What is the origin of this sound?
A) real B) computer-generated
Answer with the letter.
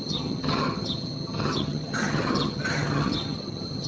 B